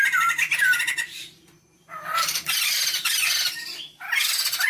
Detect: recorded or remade recorded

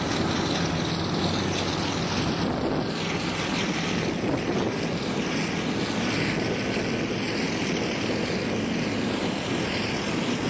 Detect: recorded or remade recorded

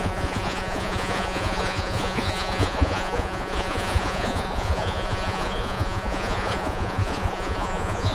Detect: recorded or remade remade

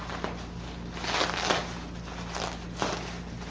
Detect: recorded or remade recorded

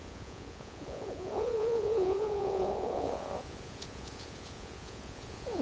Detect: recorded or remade remade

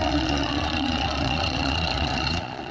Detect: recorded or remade remade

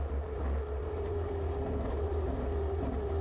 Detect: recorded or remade remade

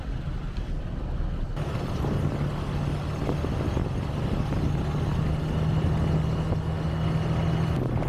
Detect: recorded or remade recorded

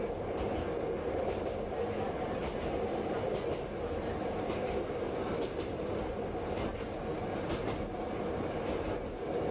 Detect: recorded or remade recorded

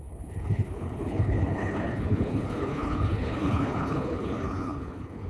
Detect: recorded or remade remade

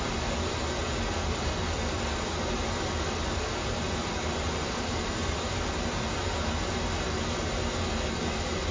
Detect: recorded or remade recorded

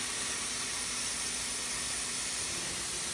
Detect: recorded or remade recorded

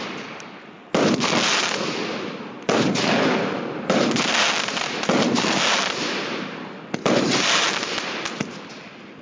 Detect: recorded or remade recorded